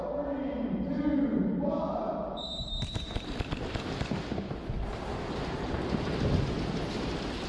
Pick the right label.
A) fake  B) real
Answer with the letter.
B